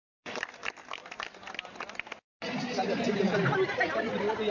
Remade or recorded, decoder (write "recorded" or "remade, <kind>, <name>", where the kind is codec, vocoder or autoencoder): recorded